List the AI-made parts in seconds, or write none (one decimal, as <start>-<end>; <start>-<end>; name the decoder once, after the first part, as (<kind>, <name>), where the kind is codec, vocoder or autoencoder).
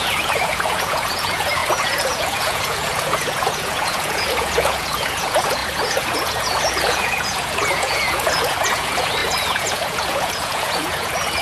0.0-11.4 (vocoder, Vocos)